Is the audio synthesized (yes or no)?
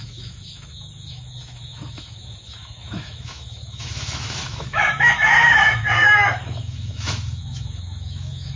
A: yes